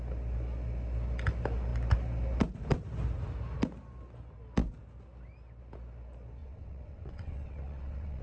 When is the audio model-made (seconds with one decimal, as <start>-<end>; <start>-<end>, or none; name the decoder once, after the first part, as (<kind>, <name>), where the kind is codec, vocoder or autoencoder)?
6.4-8.2 (vocoder, WaveNeXt)